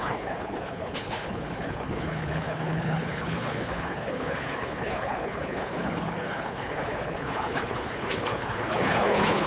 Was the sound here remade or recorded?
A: remade